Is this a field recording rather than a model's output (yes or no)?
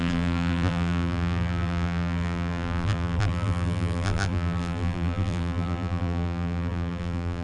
no